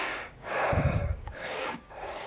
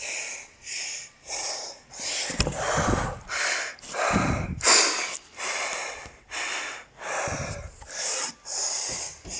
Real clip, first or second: second